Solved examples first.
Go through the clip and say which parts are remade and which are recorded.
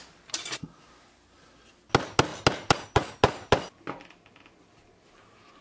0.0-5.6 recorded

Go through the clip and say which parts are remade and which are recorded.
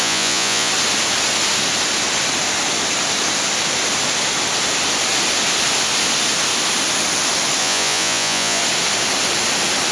0.0-0.7 remade; 0.7-7.6 recorded; 7.6-8.6 remade; 8.6-9.9 recorded